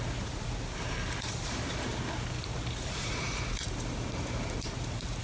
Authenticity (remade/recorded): remade